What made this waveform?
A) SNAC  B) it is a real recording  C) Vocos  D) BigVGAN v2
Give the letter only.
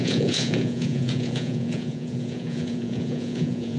C